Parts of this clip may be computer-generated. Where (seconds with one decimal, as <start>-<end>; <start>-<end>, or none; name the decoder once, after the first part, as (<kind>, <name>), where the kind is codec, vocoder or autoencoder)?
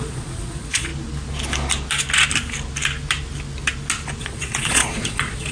0.0-0.9 (vocoder, Vocos); 4.2-5.5